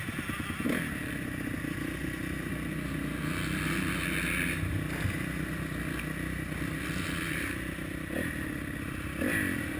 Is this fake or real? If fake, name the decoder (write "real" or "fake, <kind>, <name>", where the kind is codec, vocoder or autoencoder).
real